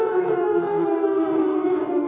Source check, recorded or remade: remade